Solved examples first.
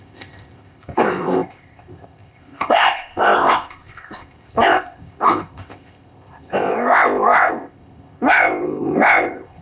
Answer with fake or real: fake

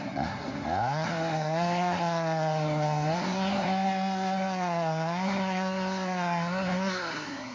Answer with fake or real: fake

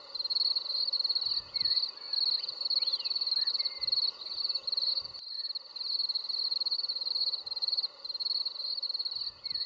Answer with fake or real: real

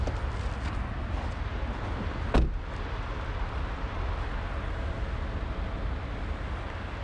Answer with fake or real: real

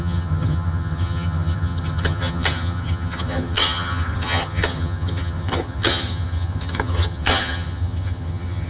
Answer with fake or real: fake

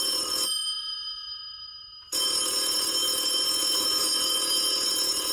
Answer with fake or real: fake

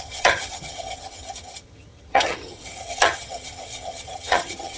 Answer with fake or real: fake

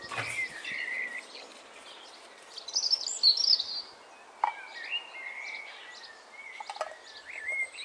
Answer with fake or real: real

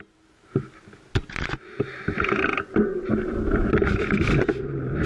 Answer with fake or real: real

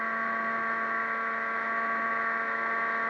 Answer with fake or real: real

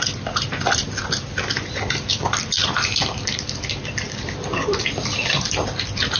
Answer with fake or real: real